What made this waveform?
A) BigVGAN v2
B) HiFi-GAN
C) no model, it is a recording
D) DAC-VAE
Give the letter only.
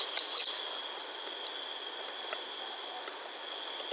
C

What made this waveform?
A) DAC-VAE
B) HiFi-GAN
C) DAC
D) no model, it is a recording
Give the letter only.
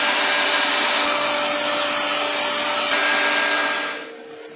D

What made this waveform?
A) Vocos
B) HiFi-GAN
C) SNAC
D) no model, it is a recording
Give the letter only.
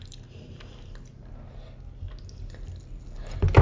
D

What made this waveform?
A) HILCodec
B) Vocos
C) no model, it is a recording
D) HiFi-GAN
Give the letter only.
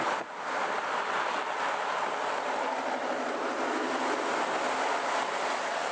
C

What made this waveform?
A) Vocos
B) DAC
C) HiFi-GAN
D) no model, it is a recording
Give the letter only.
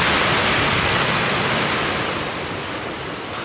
D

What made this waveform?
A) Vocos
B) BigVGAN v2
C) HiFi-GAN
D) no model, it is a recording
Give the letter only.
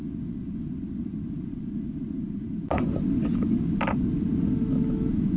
D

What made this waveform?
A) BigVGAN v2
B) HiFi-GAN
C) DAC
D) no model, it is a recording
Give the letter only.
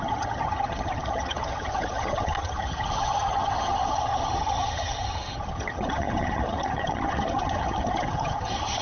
B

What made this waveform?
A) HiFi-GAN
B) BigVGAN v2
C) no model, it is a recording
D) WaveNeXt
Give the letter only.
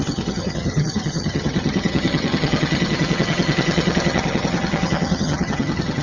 A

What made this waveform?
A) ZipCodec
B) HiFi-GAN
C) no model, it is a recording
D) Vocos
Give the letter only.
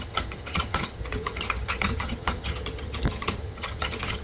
B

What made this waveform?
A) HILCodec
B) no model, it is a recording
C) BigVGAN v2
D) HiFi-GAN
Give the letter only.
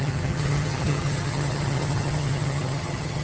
D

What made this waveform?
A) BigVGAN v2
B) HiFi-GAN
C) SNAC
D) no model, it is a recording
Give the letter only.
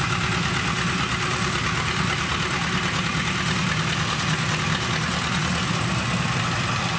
D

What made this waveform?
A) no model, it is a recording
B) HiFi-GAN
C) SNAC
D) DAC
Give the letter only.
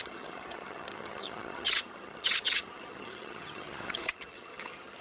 B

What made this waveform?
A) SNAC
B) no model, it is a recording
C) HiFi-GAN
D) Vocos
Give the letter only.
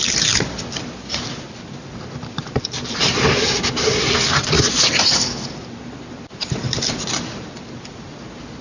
B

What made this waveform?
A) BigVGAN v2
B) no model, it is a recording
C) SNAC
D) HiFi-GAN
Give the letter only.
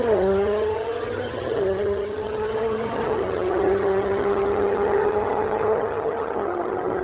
D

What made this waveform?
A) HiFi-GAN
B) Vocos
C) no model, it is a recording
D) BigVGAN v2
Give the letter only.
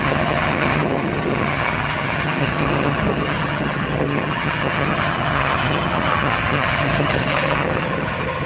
A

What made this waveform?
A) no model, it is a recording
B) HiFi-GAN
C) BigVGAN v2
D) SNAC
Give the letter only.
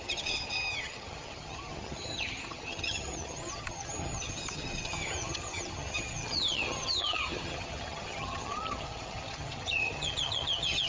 B